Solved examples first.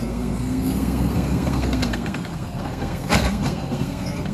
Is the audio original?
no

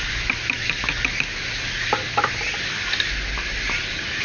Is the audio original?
yes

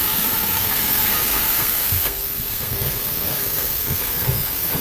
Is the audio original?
no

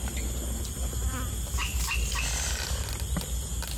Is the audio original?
yes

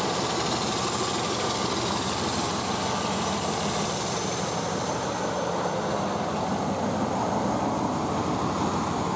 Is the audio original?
yes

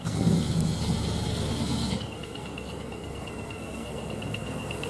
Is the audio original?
no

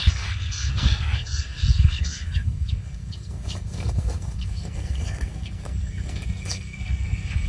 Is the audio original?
no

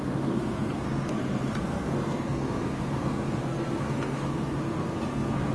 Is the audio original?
no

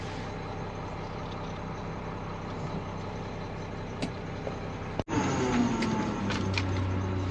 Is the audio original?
yes